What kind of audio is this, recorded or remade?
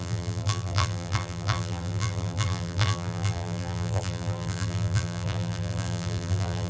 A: remade